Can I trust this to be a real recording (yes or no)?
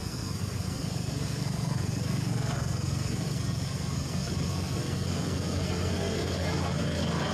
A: no